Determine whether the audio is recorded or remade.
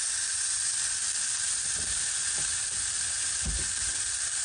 recorded